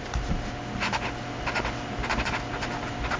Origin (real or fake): real